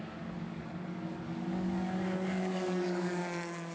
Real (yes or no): no